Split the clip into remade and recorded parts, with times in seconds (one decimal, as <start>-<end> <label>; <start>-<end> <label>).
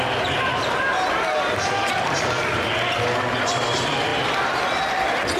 0.0-5.4 recorded